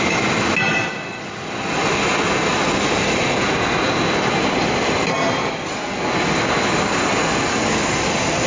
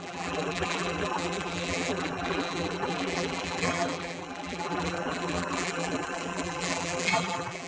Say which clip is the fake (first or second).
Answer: second